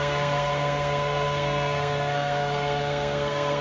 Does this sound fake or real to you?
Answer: fake